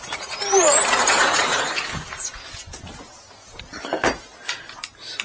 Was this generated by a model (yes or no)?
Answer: yes